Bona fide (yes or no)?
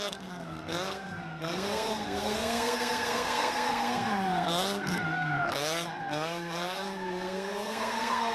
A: no